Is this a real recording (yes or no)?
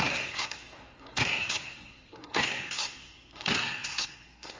no